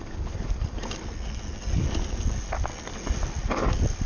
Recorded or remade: recorded